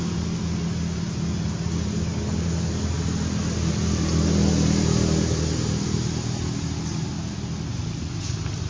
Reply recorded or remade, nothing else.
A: recorded